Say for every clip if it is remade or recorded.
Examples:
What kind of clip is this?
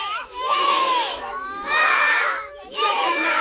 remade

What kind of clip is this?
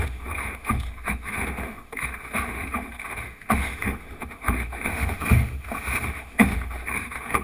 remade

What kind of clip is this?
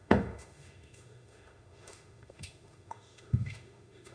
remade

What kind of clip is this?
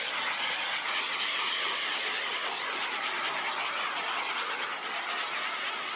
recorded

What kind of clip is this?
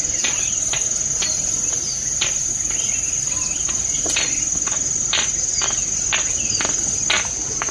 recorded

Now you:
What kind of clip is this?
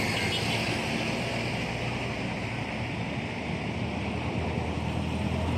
recorded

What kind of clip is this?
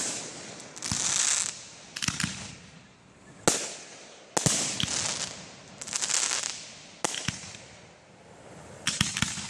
recorded